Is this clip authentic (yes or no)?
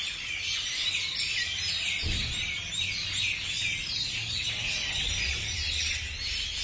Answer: yes